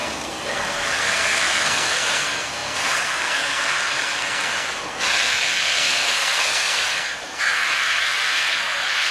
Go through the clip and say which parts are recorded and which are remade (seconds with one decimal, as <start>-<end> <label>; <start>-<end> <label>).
0.0-9.1 remade